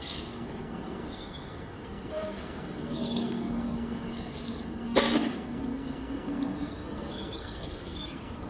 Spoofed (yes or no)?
yes